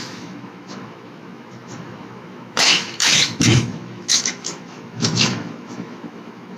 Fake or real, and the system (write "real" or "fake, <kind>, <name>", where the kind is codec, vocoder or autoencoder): fake, autoencoder, DAC-VAE